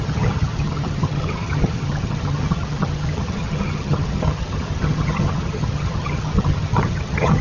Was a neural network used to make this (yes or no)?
yes